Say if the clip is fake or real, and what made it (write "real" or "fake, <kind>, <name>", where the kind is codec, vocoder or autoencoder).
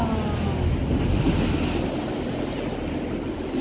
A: real